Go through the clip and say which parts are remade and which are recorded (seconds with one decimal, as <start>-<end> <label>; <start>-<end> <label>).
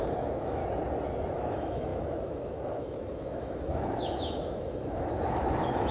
0.0-0.6 remade; 0.6-1.3 recorded; 1.3-5.9 remade